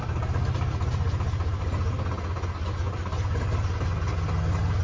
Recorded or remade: recorded